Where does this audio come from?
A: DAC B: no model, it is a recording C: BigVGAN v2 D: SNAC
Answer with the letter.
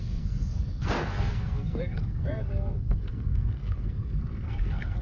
D